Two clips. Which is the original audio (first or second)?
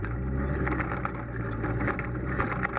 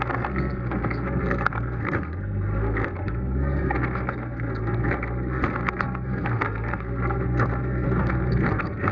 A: first